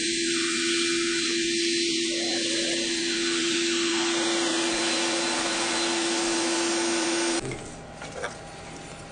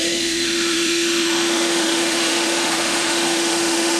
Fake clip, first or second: second